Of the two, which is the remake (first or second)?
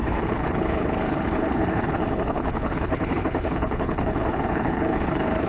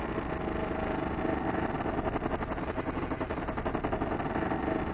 first